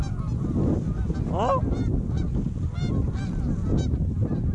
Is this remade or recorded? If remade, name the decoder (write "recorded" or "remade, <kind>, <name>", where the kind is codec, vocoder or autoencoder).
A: recorded